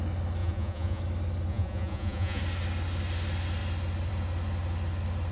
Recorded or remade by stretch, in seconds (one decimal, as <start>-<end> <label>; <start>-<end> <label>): 0.0-0.4 recorded; 0.4-1.0 remade; 1.0-1.5 recorded; 1.5-2.4 remade; 2.4-5.3 recorded